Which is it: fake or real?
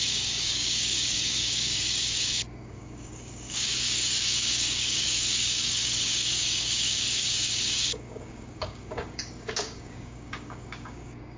fake